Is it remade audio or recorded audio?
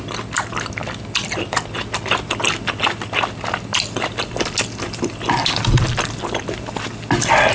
recorded